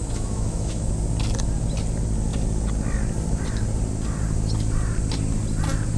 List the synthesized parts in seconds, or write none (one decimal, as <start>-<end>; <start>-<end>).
0.0-0.9